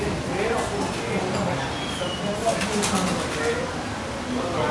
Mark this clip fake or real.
real